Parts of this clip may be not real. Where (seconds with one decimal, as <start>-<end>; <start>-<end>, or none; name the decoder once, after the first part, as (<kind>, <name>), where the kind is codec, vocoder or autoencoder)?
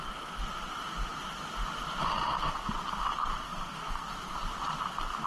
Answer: 3.4-4.1 (codec, SNAC)